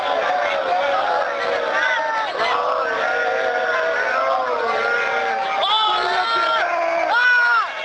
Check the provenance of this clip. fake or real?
real